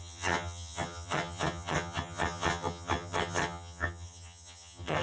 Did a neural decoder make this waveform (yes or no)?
yes